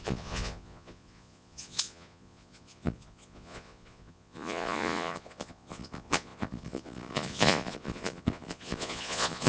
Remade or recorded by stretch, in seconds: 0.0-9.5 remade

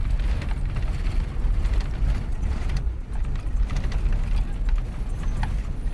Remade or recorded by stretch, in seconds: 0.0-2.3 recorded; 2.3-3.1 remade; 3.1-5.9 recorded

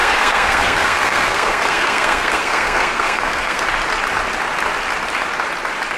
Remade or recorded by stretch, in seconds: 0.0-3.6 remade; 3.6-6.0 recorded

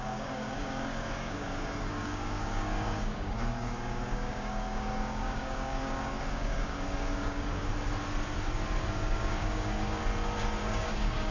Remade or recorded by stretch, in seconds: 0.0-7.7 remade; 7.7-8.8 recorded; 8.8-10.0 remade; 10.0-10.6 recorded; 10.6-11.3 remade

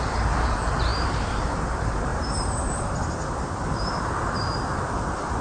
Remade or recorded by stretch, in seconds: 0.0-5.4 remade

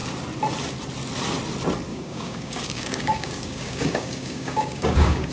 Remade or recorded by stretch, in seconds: 0.0-1.9 recorded; 1.9-5.3 remade

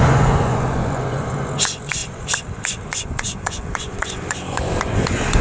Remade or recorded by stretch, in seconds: 0.0-5.4 remade

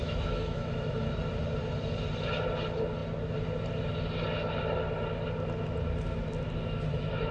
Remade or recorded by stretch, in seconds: 0.0-1.2 remade; 1.2-7.3 recorded